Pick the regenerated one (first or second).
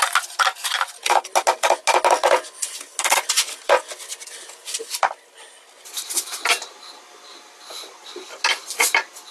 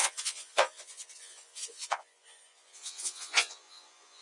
second